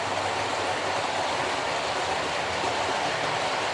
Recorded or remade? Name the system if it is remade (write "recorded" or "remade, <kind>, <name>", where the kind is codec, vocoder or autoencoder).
recorded